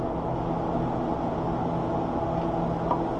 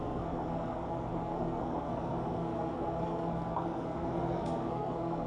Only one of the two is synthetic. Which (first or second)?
second